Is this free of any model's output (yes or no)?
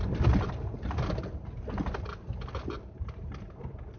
yes